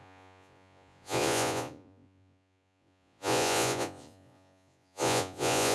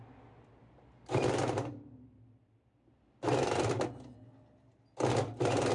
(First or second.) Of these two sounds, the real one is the second